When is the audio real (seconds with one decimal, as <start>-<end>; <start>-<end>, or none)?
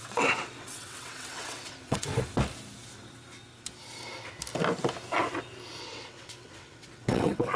2.1-5.8